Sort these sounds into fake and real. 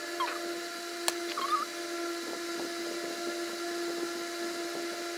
real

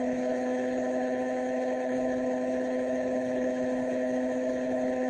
fake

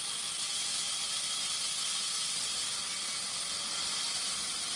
real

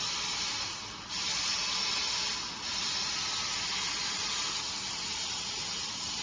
real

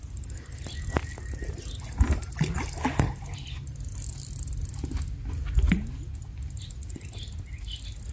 real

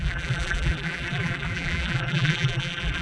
fake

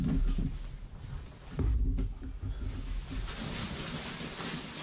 real